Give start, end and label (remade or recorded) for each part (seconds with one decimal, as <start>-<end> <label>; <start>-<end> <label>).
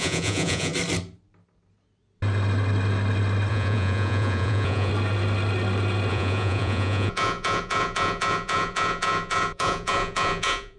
0.0-0.7 remade; 0.7-3.5 recorded; 3.5-4.9 remade; 4.9-6.1 recorded; 6.1-10.8 remade